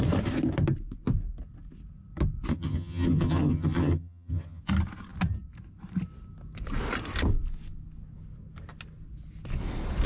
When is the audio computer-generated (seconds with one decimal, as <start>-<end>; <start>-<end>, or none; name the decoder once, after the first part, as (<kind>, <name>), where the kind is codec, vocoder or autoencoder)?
2.5-4.6 (vocoder, HiFi-GAN)